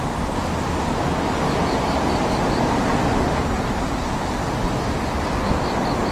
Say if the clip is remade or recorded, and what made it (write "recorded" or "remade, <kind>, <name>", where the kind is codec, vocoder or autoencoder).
recorded